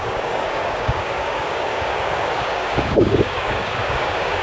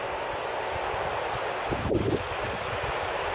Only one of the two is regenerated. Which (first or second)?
first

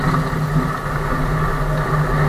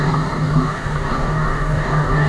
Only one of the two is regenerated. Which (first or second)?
second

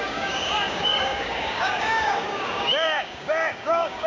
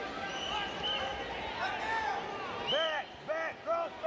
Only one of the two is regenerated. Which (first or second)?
first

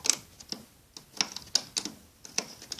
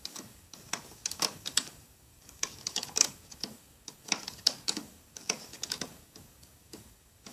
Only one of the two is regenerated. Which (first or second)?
second